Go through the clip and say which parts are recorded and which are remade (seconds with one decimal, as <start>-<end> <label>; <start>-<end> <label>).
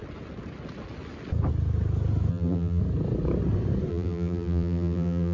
0.0-2.3 recorded; 2.3-2.8 remade; 2.8-3.9 recorded; 3.9-5.3 remade